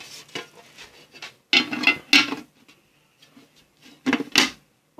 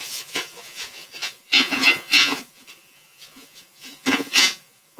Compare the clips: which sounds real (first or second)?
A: first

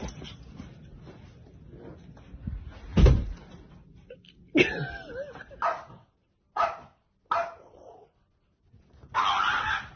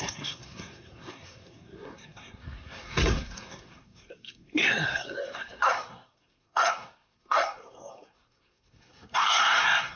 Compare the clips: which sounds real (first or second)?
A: first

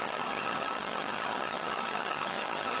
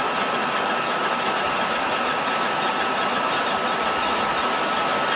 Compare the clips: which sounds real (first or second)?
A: second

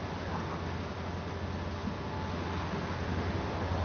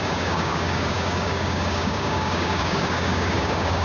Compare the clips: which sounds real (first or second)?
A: first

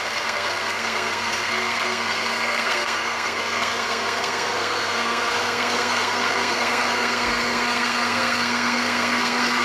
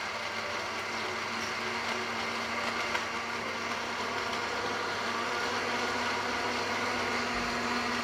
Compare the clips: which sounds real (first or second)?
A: second